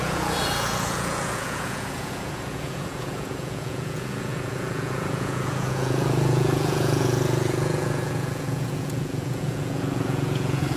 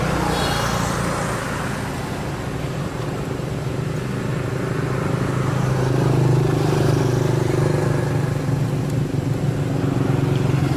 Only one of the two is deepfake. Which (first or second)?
first